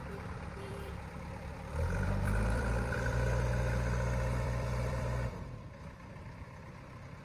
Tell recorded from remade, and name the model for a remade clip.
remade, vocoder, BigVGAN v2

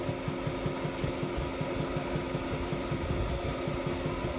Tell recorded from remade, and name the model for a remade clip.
recorded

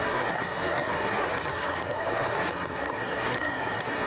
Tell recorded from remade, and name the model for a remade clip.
remade, codec, SNAC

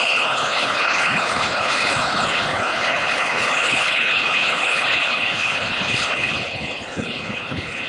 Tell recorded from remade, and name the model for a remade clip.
remade, codec, HILCodec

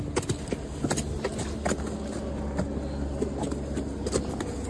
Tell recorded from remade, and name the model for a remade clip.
recorded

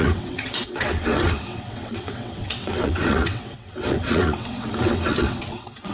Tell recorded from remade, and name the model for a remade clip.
remade, vocoder, WaveNeXt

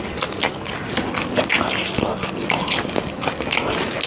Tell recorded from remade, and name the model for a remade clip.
recorded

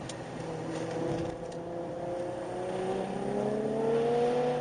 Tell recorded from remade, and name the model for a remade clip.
recorded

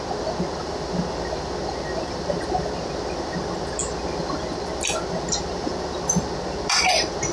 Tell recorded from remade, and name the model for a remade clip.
recorded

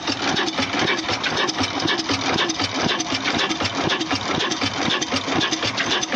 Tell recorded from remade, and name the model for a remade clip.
recorded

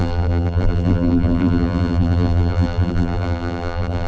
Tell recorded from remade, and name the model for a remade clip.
remade, vocoder, BigVGAN v2